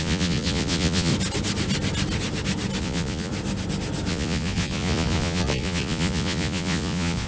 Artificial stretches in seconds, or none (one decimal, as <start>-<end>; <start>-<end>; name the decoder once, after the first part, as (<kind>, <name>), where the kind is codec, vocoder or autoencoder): 0.0-1.1 (vocoder, Vocos); 2.8-3.3; 4.1-7.3